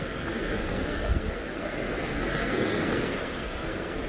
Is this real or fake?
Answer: fake